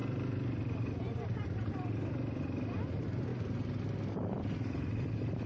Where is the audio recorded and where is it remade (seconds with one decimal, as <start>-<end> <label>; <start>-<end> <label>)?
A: 0.0-3.3 remade; 3.3-4.4 recorded; 4.4-5.5 remade